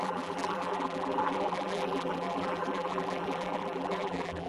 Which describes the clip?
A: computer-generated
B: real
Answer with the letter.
A